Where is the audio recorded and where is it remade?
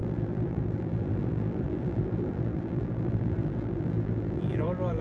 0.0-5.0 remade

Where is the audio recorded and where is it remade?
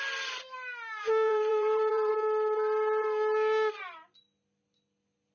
0.0-1.0 recorded; 1.0-2.1 remade; 2.1-5.3 recorded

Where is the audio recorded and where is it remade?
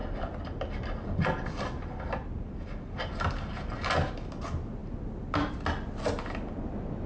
0.0-7.1 recorded